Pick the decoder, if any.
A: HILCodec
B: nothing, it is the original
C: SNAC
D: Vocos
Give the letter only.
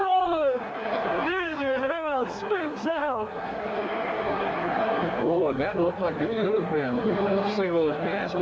C